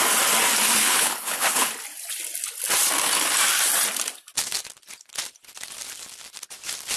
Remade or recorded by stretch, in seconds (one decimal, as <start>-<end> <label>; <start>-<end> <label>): 0.0-0.8 recorded; 0.8-1.7 remade; 1.7-7.0 recorded